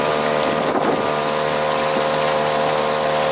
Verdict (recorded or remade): recorded